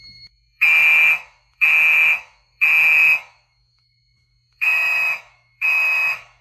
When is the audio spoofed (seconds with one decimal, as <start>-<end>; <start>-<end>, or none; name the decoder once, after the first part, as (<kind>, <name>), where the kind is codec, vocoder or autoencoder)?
0.0-6.4 (autoencoder, DAC-VAE)